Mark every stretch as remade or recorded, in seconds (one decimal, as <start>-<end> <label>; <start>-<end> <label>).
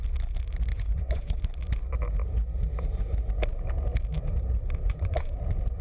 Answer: 0.0-0.7 recorded; 0.7-1.4 remade; 1.4-4.8 recorded; 4.8-5.3 remade; 5.3-5.8 recorded